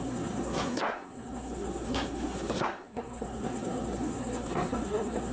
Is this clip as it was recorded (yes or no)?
no